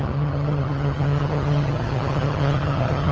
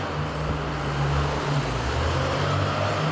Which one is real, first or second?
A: second